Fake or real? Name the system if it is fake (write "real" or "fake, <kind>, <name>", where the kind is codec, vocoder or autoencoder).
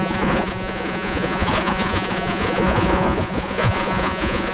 fake, vocoder, Vocos